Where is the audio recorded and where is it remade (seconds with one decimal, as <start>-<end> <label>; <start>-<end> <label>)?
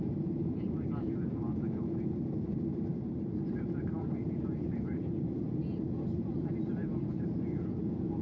0.0-8.2 remade